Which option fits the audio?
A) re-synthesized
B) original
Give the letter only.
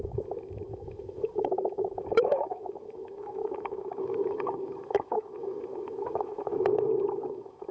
A